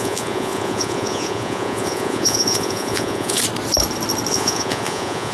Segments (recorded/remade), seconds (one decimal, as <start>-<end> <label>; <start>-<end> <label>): 0.0-3.4 remade; 3.4-4.3 recorded; 4.3-5.3 remade